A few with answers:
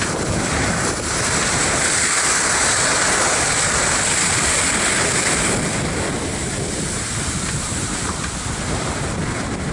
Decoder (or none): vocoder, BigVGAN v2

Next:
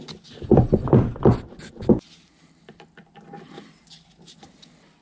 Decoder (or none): none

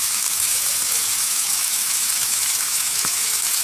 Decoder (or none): autoencoder, DAC-VAE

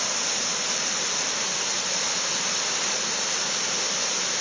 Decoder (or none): none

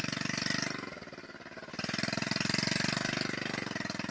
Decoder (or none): none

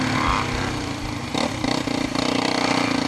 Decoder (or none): none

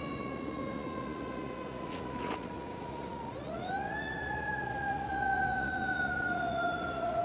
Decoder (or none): vocoder, Vocos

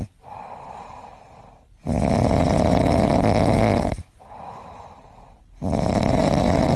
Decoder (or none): none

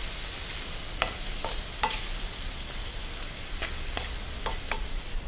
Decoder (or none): none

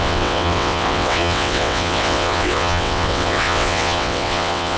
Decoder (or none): vocoder, WaveNeXt